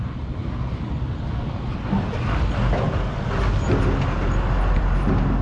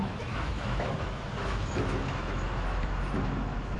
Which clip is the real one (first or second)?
first